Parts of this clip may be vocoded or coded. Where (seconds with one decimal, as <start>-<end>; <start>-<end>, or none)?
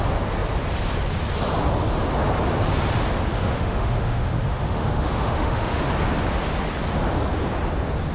3.4-5.8